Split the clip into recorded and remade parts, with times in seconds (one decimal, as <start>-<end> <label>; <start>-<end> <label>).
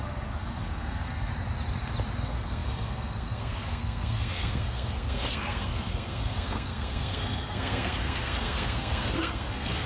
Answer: 0.0-1.3 remade; 1.3-2.2 recorded; 2.2-9.9 remade